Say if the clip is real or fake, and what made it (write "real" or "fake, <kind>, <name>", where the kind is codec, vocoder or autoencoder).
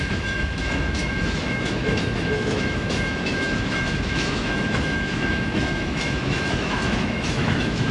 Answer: fake, autoencoder, DAC-VAE